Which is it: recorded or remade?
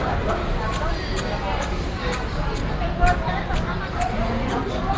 recorded